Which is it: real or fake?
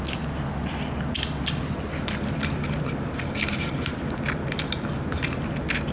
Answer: real